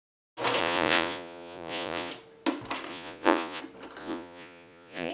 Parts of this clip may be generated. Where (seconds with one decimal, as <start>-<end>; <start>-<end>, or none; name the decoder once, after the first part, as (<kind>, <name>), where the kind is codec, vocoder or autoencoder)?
0.6-2.1 (vocoder, Vocos); 2.9-3.6; 4.0-5.1